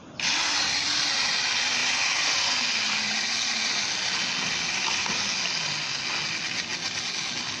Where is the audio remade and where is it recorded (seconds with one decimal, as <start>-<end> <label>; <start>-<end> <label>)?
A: 0.0-7.6 recorded